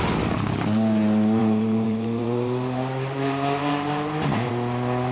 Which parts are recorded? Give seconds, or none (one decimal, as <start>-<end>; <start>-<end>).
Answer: 0.0-1.4; 4.5-5.1